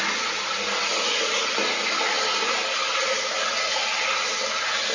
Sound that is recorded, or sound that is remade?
recorded